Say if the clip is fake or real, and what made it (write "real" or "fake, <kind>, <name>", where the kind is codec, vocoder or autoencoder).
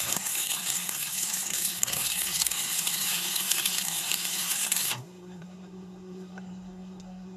fake, codec, SNAC